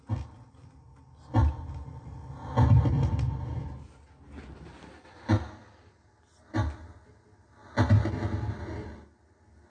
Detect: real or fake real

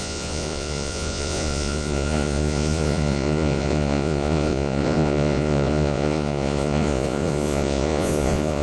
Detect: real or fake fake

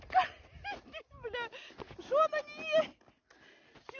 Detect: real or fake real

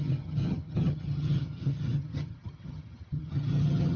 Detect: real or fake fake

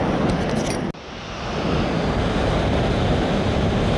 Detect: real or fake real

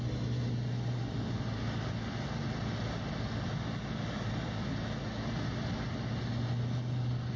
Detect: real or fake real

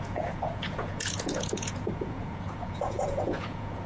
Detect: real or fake fake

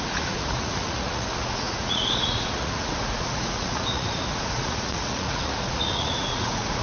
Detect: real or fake fake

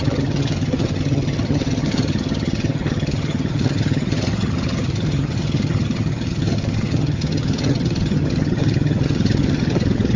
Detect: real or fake fake